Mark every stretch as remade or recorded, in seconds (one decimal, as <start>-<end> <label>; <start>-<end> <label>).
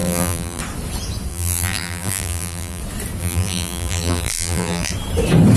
0.0-0.6 remade; 0.6-1.3 recorded; 1.3-2.8 remade; 2.8-3.2 recorded; 3.2-4.9 remade; 4.9-5.6 recorded